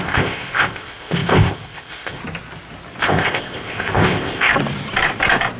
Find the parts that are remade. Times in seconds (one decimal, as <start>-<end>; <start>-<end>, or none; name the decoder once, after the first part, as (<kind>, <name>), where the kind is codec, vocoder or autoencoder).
0.0-2.2 (codec, ZipCodec); 3.0-4.5